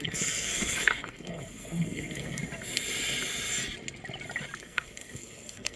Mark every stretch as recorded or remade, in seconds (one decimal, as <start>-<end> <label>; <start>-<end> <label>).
0.0-2.4 remade; 2.4-4.6 recorded; 4.6-5.8 remade